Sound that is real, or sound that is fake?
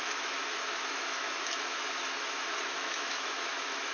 fake